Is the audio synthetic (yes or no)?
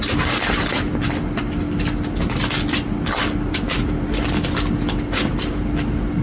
no